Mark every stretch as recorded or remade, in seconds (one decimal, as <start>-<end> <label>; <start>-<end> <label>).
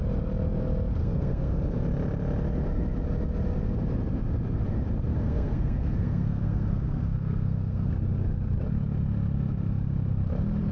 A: 0.0-1.0 recorded; 1.0-1.6 remade; 1.6-5.1 recorded; 5.1-7.9 remade; 7.9-10.7 recorded